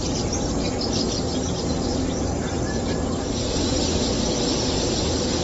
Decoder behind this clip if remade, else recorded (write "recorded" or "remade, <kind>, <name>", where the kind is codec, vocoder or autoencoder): recorded